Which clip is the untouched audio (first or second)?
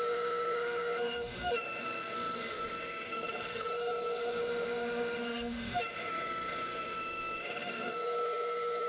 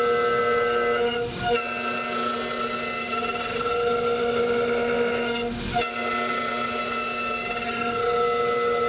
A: second